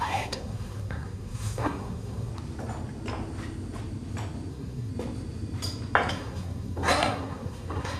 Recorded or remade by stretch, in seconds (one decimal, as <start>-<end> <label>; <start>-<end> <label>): 0.0-2.3 remade; 2.3-4.5 recorded; 4.5-4.9 remade; 4.9-6.1 recorded; 6.1-8.0 remade